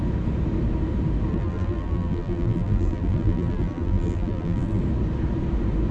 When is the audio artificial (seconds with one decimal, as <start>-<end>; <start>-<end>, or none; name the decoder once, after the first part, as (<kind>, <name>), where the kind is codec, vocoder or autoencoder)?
1.3-4.8 (vocoder, BigVGAN v2)